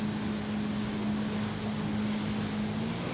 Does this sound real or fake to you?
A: real